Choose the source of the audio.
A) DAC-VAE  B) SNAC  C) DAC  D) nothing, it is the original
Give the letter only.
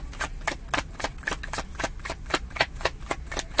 D